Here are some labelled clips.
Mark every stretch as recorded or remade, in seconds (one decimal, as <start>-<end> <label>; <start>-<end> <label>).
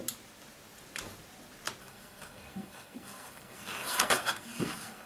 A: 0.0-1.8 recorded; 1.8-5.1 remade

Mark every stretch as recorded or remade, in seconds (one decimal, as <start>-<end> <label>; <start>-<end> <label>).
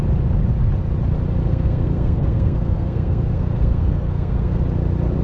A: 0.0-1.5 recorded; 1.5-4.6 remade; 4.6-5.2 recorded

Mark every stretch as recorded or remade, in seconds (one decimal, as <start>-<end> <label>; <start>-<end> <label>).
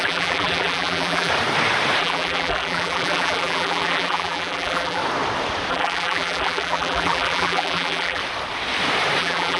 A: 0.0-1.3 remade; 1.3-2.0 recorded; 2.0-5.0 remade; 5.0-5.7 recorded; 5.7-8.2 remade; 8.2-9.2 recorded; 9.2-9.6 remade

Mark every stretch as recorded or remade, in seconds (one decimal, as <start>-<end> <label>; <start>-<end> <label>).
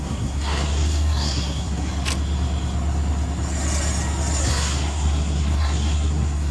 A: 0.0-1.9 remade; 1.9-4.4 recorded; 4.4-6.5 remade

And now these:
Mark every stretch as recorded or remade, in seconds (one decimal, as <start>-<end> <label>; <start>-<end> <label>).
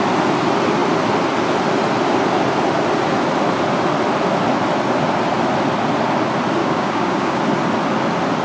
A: 0.0-6.6 recorded; 6.6-7.4 remade; 7.4-8.4 recorded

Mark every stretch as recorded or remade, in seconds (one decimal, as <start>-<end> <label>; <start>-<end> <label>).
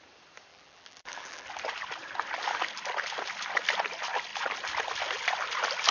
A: 0.0-0.5 recorded; 0.5-1.5 remade; 1.5-5.9 recorded